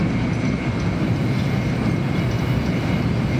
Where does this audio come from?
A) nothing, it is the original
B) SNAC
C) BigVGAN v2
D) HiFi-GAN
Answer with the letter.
C